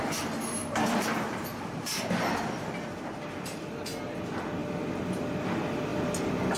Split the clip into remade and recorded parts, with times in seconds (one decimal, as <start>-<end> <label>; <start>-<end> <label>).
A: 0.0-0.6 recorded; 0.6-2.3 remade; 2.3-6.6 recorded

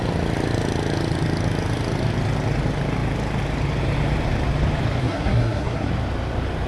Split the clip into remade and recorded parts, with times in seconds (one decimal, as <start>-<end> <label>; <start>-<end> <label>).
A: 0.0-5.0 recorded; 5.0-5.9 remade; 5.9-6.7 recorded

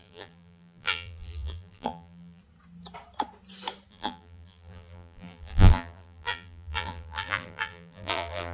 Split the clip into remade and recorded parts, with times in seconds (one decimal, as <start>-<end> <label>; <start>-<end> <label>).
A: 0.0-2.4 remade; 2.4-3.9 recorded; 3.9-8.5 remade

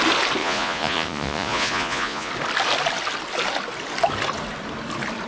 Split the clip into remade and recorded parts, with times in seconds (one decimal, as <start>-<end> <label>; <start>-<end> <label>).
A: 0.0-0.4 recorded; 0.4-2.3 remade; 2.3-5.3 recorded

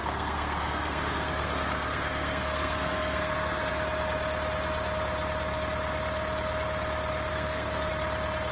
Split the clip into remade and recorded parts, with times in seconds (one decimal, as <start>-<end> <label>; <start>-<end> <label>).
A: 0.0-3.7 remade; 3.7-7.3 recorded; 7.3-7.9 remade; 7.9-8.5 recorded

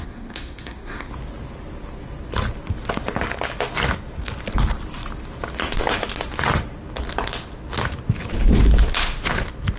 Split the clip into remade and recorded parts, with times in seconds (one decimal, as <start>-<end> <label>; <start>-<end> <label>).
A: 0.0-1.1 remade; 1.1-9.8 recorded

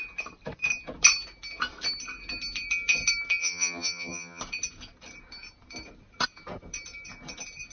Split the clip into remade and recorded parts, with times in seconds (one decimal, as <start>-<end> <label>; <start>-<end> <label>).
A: 0.0-3.4 recorded; 3.4-4.4 remade; 4.4-7.7 recorded